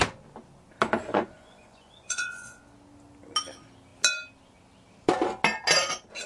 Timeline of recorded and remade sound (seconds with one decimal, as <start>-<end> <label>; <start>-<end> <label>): 0.0-1.1 recorded; 1.1-2.6 remade; 2.6-6.3 recorded